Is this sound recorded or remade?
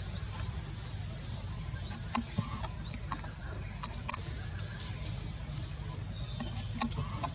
recorded